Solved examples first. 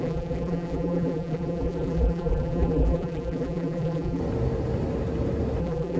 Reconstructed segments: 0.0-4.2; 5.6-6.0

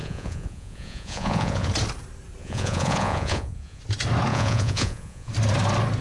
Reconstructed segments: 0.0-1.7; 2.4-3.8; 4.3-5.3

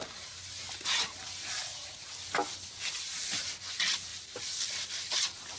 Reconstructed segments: 4.1-4.9

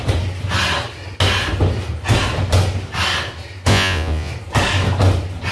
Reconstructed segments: 3.7-4.3

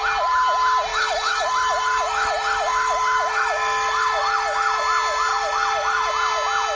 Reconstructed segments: 0.9-4.8; 5.3-6.1